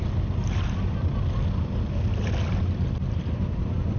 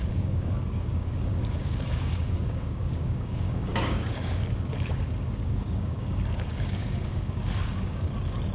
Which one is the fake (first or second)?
second